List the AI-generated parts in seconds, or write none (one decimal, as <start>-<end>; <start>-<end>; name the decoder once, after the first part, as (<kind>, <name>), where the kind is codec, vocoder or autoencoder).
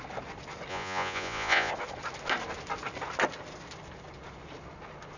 0.7-1.7 (vocoder, Vocos)